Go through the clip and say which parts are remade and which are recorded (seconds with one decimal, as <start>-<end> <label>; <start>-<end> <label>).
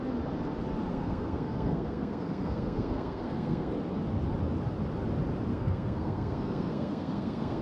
0.0-0.9 recorded; 0.9-3.7 remade; 3.7-5.5 recorded; 5.5-7.6 remade